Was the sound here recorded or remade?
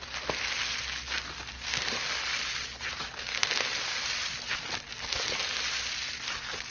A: recorded